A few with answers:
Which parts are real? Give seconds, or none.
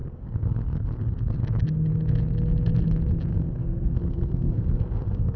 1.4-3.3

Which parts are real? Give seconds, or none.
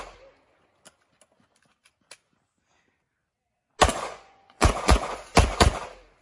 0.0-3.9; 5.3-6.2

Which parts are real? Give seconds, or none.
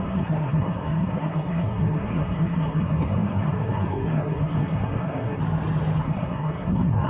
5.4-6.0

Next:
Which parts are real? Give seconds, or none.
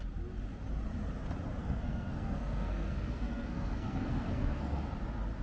0.0-1.6; 4.8-5.4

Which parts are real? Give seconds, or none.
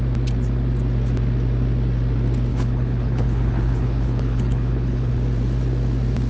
0.0-2.5; 5.1-6.3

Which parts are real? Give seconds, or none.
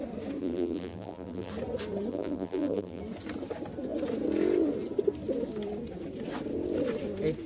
0.0-0.4; 1.5-2.1; 3.0-7.5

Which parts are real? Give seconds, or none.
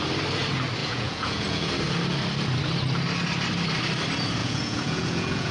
0.0-0.8; 1.7-4.4